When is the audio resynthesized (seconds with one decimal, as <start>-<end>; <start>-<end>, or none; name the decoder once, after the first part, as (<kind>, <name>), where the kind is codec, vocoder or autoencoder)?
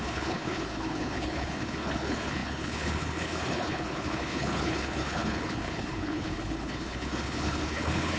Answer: 0.0-8.2 (codec, HILCodec)